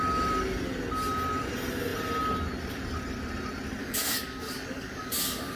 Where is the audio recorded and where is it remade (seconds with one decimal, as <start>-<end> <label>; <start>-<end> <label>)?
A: 0.0-3.8 recorded; 3.8-5.6 remade